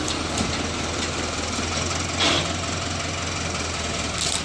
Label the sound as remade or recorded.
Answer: recorded